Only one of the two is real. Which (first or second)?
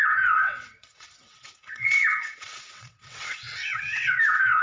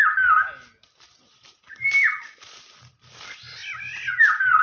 second